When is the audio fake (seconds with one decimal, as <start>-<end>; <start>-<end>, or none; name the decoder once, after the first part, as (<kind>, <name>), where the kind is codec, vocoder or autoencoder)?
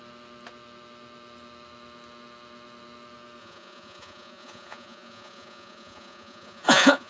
3.4-7.1 (vocoder, Vocos)